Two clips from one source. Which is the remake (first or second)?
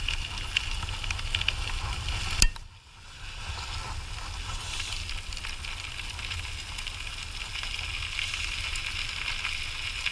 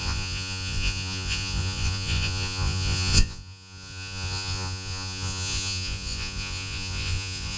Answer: second